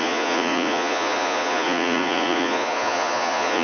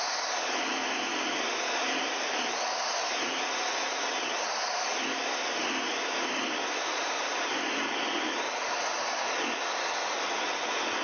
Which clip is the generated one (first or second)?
first